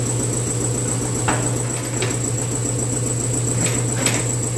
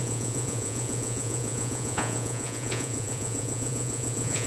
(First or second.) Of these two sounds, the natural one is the first